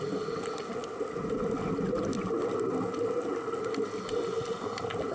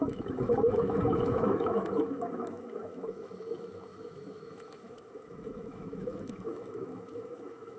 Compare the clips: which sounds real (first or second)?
first